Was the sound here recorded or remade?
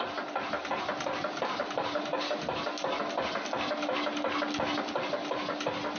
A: recorded